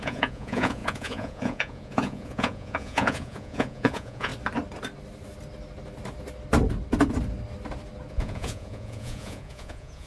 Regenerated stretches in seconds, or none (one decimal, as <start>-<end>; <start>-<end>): 0.0-4.3; 8.1-10.1